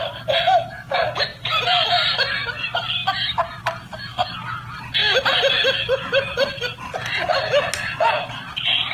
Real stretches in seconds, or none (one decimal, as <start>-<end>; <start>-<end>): 0.0-8.9